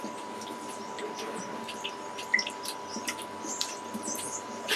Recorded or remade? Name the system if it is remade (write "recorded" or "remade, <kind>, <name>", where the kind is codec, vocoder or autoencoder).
remade, vocoder, BigVGAN v2